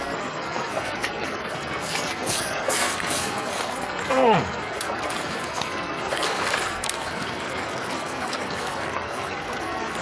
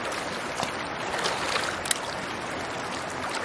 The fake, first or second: first